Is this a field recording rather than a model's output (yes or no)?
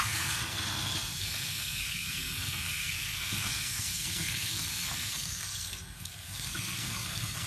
no